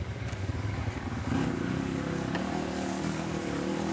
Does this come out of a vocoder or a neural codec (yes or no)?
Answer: yes